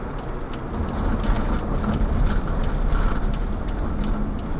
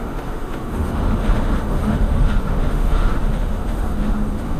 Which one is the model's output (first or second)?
second